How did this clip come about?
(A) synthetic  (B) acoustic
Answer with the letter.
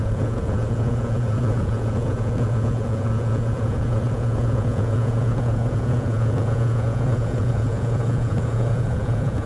A